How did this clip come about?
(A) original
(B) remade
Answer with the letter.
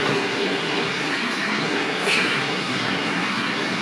B